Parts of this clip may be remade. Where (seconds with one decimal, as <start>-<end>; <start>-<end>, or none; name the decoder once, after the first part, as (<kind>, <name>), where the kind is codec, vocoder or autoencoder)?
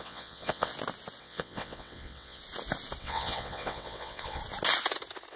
0.0-0.7 (vocoder, WaveNeXt); 1.2-2.4; 3.0-4.4